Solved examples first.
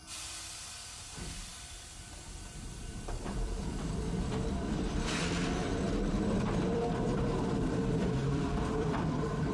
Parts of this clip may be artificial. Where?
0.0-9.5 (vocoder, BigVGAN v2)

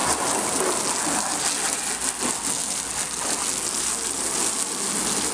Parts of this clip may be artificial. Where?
none

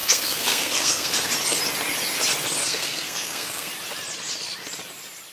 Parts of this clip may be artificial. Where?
0.0-1.3 (codec, SNAC); 2.6-3.7

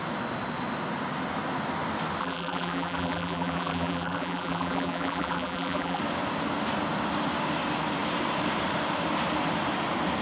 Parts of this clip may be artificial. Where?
2.2-6.0 (vocoder, BigVGAN v2)

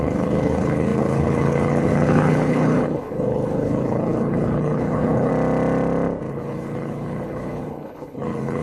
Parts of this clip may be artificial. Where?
0.0-5.3 (codec, HILCodec); 6.3-8.6

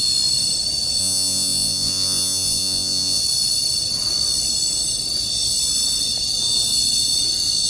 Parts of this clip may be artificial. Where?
1.0-3.2 (vocoder, Vocos)

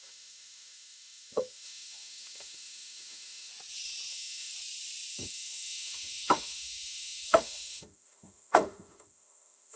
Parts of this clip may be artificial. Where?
0.0-3.5 (autoencoder, DAC-VAE); 4.1-4.5; 5.1-9.8

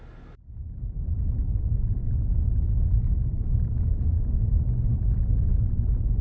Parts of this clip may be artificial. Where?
0.6-1.5 (vocoder, Vocos)